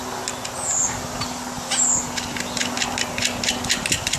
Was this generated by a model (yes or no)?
no